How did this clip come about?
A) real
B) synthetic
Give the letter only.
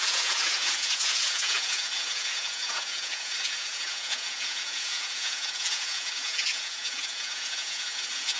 B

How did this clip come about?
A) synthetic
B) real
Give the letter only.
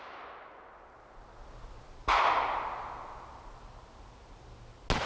B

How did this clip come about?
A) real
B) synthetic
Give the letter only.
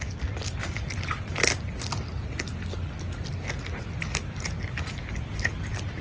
A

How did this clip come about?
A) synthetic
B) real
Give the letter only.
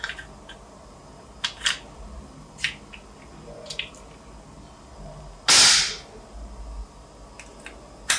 B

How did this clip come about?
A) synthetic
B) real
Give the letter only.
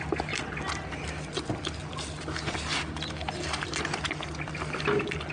B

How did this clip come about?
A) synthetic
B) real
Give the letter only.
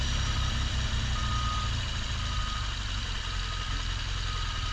B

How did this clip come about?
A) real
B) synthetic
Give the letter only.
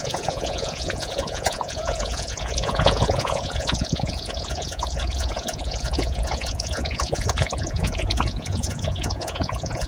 B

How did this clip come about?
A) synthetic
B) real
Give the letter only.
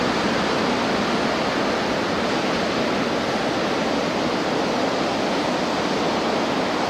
B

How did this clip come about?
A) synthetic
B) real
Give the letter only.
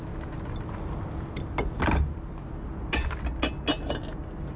B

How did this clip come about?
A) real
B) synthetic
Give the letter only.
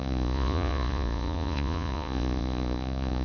B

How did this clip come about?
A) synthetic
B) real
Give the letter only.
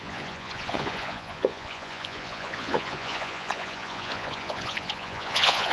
A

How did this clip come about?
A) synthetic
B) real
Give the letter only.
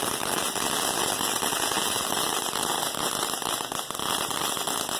B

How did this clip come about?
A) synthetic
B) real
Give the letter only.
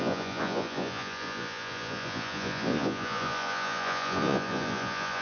A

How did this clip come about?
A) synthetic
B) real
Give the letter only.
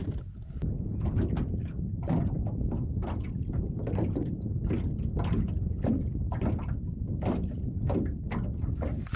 B